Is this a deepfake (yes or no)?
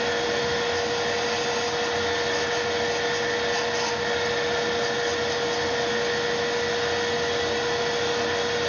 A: no